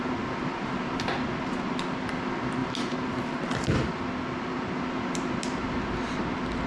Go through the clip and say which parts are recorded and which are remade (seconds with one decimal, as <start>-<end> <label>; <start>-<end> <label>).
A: 0.0-6.7 recorded